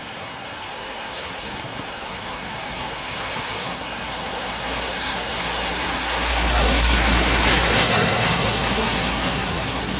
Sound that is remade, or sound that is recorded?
remade